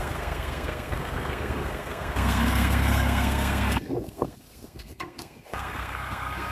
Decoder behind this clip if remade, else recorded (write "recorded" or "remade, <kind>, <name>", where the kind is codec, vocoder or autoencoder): remade, codec, SNAC